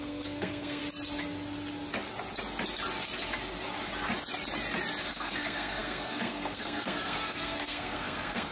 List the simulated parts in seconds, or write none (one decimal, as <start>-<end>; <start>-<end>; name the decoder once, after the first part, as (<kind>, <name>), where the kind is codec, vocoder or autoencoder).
0.0-0.8 (codec, SNAC); 5.1-8.5